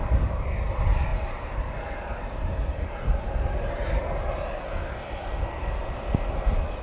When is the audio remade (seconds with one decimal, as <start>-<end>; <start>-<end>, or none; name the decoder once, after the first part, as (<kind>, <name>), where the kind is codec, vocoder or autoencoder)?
1.1-4.4 (vocoder, BigVGAN v2)

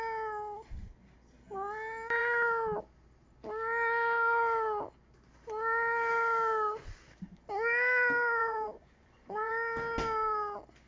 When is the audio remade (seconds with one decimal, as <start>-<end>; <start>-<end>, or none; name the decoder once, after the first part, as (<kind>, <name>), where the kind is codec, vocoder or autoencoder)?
8.4-9.5 (vocoder, Vocos)

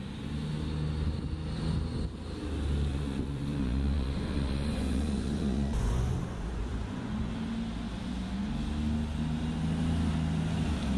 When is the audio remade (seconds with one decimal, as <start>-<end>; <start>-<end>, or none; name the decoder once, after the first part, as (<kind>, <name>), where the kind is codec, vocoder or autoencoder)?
2.9-7.3 (vocoder, Vocos)

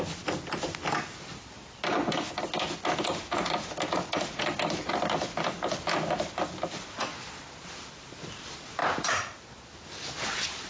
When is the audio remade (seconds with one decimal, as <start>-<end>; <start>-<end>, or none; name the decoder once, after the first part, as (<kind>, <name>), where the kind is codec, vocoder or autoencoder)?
none

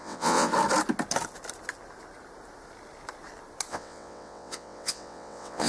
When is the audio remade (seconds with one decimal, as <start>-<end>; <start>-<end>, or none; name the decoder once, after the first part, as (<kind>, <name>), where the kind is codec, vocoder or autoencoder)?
0.0-0.5 (vocoder, WaveNeXt); 3.7-5.7

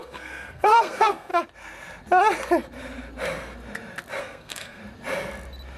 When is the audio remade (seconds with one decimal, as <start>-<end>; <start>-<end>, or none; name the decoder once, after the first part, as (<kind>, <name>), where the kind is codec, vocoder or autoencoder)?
0.0-1.3 (codec, SNAC); 4.2-4.8

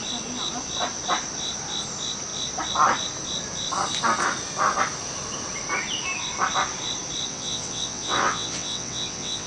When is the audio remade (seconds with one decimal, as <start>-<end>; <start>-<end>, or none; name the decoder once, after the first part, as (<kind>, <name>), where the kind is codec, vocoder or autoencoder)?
7.3-9.5 (vocoder, WaveNeXt)